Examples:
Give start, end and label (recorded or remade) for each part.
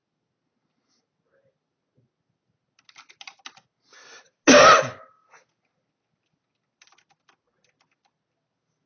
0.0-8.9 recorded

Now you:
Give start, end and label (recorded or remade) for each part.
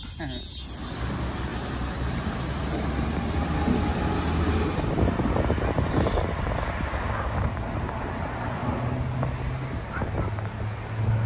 0.0-6.9 recorded; 6.9-7.4 remade; 7.4-11.3 recorded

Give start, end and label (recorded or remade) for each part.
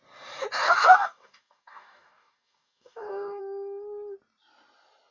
0.0-0.6 recorded; 0.6-3.4 remade; 3.4-5.1 recorded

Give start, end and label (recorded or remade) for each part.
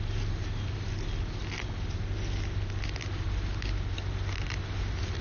0.0-5.2 recorded